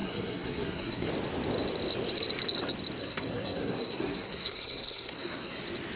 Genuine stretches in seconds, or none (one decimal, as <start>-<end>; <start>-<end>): 1.1-3.0; 5.6-6.0